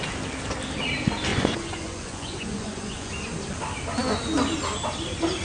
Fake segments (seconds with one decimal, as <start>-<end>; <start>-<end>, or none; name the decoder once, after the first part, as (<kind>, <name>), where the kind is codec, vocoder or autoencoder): 1.3-3.1 (vocoder, Vocos)